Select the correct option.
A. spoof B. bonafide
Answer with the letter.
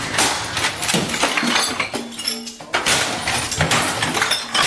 B